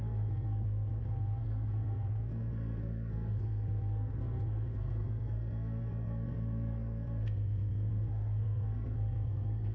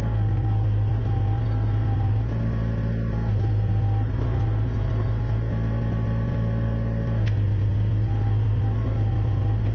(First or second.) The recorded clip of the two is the second